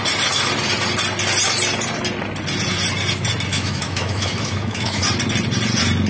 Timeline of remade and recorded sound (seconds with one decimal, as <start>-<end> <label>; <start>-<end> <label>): 0.0-3.5 recorded; 3.5-5.0 remade; 5.0-6.1 recorded